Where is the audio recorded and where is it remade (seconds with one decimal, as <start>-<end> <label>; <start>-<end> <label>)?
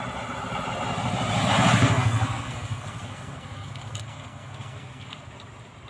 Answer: 0.0-1.8 recorded; 1.8-5.3 remade; 5.3-5.9 recorded